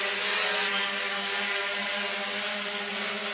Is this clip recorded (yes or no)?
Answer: yes